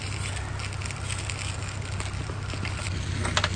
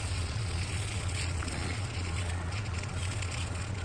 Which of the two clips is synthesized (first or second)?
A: second